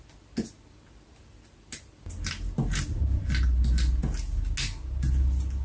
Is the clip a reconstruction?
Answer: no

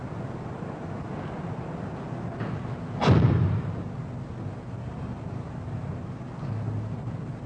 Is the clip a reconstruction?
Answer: no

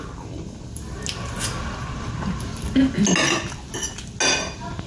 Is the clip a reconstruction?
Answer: no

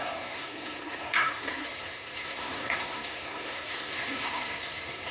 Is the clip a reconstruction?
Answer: yes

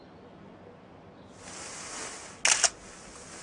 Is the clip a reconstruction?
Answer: no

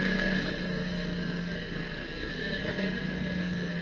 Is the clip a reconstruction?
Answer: yes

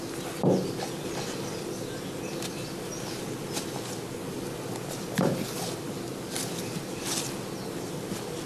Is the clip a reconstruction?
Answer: no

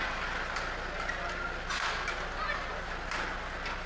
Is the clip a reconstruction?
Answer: no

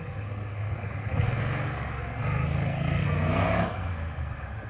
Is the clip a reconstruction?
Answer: yes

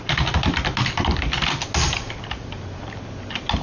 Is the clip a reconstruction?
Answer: no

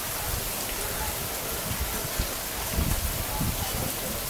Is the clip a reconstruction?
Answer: no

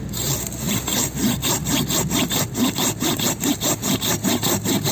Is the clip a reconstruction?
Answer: no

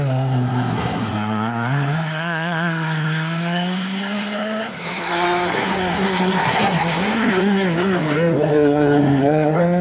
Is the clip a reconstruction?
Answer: yes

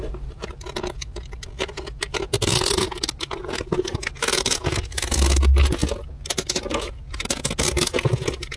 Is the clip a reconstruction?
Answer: no